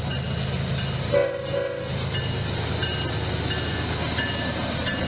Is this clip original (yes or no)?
yes